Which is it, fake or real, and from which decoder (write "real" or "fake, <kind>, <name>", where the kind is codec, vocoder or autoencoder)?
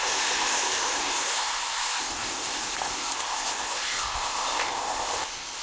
fake, codec, ZipCodec